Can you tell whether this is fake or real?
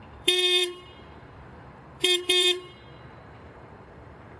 fake